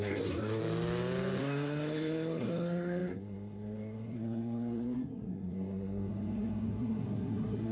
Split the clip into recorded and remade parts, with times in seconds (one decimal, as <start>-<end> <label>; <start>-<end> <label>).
0.0-0.6 remade; 0.6-1.4 recorded; 1.4-7.7 remade